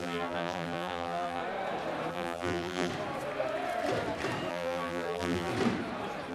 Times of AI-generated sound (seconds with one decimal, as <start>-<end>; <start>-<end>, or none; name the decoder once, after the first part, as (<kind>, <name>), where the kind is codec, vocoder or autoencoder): 0.0-1.4 (vocoder, BigVGAN v2); 2.1-2.9; 4.5-5.5